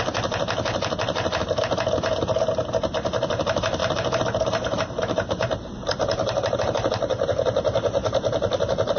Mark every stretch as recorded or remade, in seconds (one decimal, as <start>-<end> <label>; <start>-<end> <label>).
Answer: 0.0-3.8 recorded; 3.8-9.0 remade